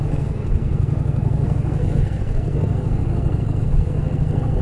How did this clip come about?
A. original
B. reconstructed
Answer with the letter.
B